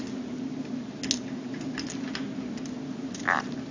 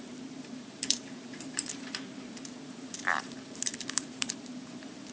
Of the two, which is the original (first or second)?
first